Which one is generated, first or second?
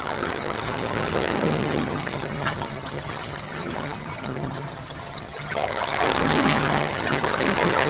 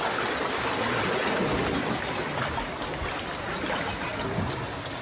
first